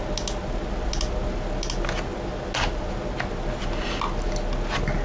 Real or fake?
real